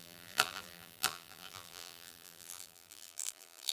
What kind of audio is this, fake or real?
fake